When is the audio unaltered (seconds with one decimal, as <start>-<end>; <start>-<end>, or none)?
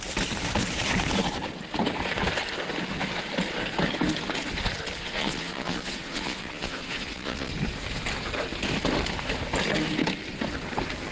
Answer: 0.0-5.0; 7.5-11.1